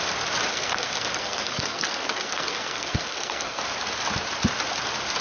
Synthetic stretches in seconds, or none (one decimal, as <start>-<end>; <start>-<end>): 0.5-3.6